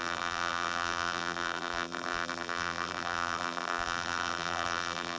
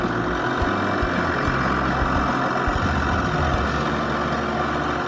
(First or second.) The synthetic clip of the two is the first